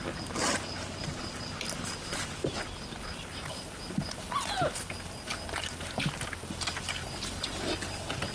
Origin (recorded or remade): recorded